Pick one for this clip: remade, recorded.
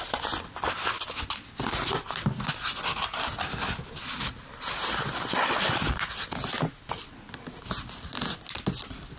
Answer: recorded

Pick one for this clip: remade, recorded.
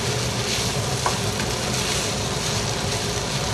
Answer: recorded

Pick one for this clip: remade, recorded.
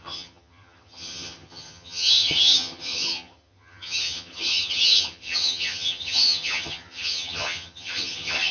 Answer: remade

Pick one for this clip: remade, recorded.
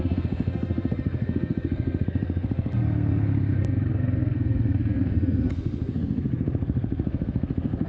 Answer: remade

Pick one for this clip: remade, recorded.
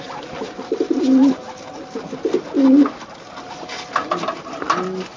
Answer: recorded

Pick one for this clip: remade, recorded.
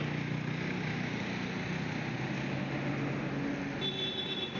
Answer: recorded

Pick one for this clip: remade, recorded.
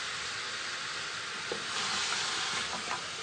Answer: recorded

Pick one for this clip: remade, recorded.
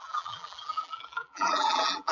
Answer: remade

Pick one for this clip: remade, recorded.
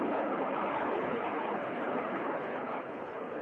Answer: remade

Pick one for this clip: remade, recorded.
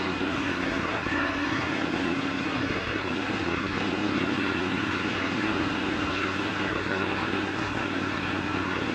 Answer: remade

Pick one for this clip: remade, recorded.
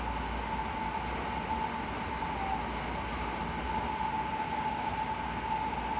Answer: recorded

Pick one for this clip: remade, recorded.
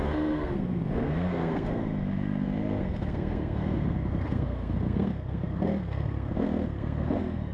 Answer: remade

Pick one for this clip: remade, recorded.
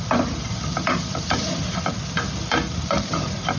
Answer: recorded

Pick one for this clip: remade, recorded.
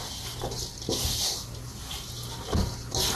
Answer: recorded